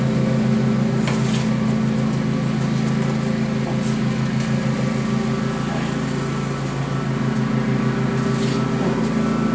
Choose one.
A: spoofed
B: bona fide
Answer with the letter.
B